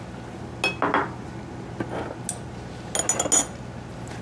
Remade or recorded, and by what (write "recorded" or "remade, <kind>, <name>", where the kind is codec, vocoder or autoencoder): recorded